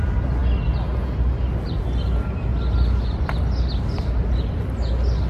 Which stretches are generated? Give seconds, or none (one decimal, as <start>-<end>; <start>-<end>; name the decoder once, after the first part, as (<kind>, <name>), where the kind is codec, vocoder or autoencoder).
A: none